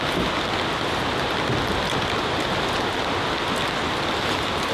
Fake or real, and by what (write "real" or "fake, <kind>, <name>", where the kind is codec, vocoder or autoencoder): real